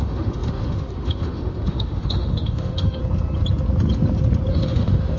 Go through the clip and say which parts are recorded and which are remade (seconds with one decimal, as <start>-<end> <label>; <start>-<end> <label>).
0.0-3.0 remade; 3.0-4.5 recorded; 4.5-5.2 remade

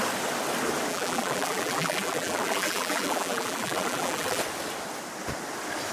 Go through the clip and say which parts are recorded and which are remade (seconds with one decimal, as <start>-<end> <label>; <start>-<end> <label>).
0.0-0.9 recorded; 0.9-4.4 remade; 4.4-5.9 recorded

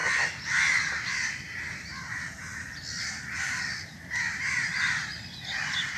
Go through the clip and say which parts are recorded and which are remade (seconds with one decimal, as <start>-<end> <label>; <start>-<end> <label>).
0.0-2.5 recorded; 2.5-6.0 remade

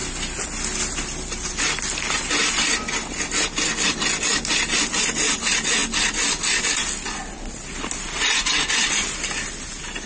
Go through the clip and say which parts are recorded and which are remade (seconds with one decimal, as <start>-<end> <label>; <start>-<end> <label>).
0.0-10.1 recorded

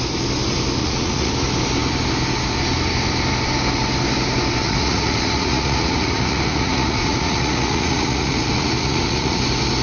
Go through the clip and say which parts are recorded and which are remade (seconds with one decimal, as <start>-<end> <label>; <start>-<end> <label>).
0.0-0.8 recorded; 0.8-1.3 remade; 1.3-4.6 recorded; 4.6-9.4 remade; 9.4-9.8 recorded

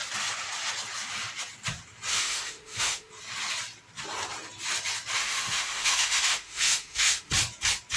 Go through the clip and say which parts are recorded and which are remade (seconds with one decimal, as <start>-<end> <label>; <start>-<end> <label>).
0.0-2.1 recorded; 2.1-3.1 remade; 3.1-5.2 recorded; 5.2-7.3 remade; 7.3-8.0 recorded